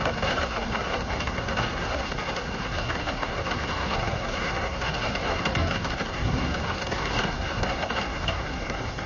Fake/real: fake